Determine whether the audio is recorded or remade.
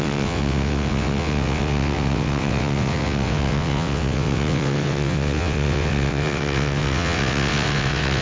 remade